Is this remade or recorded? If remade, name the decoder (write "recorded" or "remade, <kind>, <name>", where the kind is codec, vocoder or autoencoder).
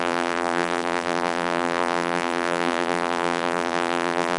remade, vocoder, BigVGAN v2